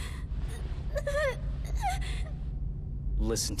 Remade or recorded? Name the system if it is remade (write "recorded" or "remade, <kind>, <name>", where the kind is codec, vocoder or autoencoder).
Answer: recorded